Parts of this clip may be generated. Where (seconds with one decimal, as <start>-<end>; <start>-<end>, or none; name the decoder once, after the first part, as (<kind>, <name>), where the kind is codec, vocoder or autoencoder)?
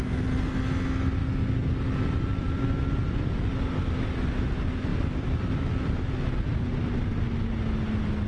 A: 2.3-3.4 (vocoder, BigVGAN v2); 4.9-5.7; 6.7-7.2